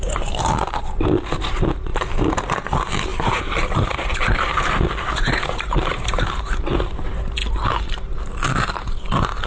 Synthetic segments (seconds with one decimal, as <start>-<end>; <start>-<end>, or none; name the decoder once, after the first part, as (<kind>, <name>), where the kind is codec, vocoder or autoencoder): 0.0-1.9 (vocoder, BigVGAN v2); 2.5-7.4; 8.8-9.5